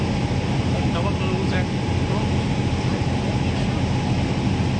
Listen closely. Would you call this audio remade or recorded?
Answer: recorded